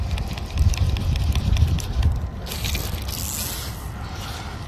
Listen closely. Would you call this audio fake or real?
real